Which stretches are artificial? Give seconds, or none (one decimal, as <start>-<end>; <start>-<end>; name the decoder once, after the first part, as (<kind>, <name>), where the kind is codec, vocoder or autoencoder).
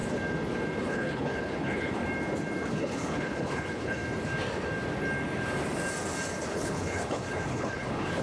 0.8-2.0 (codec, HILCodec); 2.7-4.0; 6.5-8.2